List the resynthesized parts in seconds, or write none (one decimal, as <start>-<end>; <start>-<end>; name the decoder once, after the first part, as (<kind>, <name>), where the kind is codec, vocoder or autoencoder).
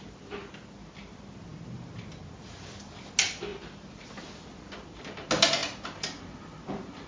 3.5-4.2 (vocoder, BigVGAN v2)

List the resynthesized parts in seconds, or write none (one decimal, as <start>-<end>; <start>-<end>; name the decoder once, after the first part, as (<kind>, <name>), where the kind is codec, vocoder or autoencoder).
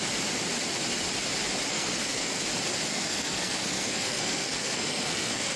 1.7-2.4 (codec, SNAC); 2.9-5.6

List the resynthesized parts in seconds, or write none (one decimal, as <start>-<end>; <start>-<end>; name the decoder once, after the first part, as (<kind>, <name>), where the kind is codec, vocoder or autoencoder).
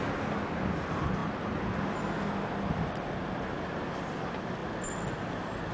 none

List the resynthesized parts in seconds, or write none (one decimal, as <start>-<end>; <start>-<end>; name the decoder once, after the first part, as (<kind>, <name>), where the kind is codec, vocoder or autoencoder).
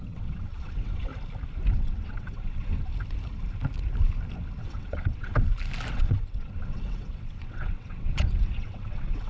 0.0-1.1 (vocoder, WaveNeXt); 1.7-2.9; 4.6-5.3; 5.9-9.3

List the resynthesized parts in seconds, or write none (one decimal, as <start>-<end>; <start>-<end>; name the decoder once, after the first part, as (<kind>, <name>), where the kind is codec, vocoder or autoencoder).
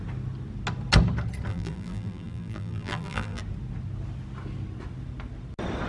1.5-3.4 (vocoder, BigVGAN v2)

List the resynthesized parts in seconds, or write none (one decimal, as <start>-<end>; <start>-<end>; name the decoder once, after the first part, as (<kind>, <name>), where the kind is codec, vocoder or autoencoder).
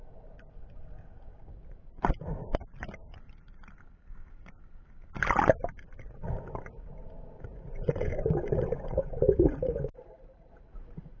7.5-9.9 (vocoder, Vocos)